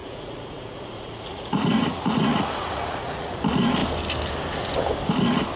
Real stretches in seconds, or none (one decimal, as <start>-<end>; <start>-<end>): 3.4-5.6